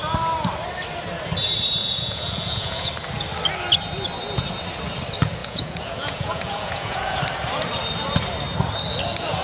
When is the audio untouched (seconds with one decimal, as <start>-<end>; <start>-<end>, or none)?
0.0-1.8; 2.9-5.4; 7.2-9.4